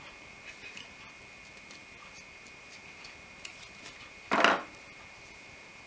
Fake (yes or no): no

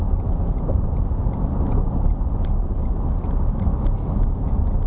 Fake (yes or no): no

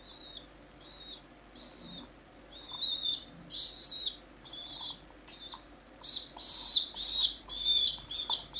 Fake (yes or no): no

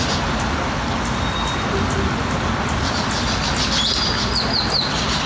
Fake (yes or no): no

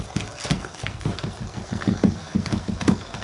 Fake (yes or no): yes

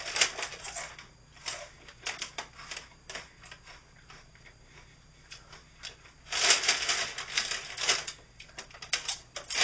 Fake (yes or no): no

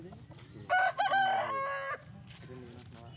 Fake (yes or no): no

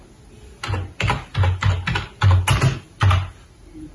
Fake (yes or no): no